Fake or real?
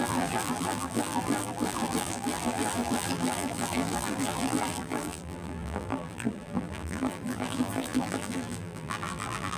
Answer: fake